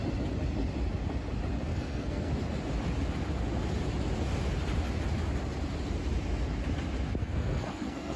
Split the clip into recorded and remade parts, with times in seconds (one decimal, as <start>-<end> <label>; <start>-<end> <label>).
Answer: 0.0-1.7 recorded; 1.7-2.3 remade; 2.3-7.2 recorded; 7.2-8.2 remade